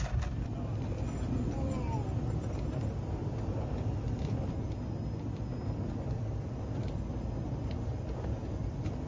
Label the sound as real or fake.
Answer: real